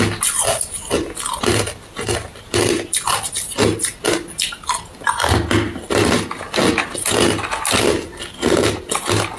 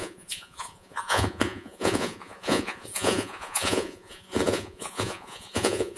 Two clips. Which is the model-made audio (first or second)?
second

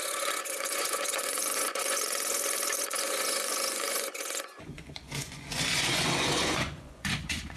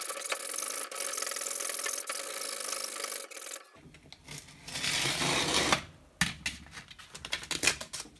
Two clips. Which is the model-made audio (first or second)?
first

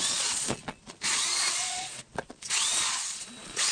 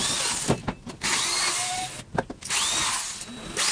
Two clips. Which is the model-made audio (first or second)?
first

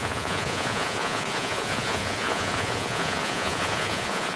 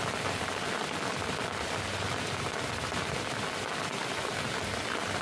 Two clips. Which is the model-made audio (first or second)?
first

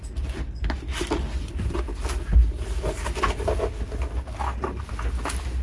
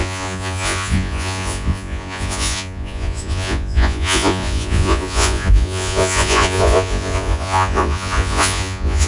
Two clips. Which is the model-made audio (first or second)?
second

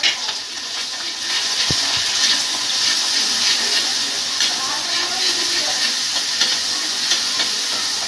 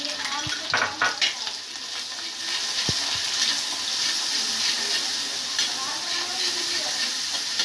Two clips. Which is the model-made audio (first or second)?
first